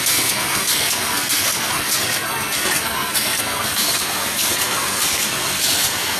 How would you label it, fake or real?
fake